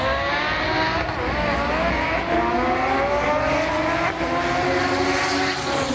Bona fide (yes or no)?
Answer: yes